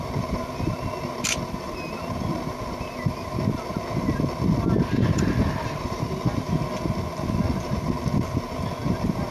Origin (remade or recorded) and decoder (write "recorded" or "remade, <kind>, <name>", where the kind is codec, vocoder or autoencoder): recorded